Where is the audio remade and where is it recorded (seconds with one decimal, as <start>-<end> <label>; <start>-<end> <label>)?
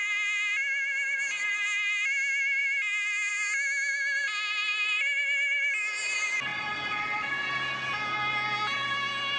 0.0-6.5 recorded; 6.5-7.3 remade; 7.3-9.4 recorded